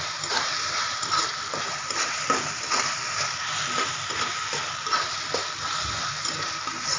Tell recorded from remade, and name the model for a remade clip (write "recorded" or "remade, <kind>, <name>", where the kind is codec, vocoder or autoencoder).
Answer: remade, vocoder, BigVGAN v2